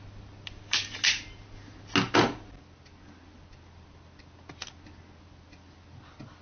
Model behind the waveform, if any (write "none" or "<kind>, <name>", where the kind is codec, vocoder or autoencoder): none